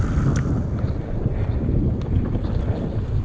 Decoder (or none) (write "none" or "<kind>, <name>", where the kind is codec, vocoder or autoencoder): none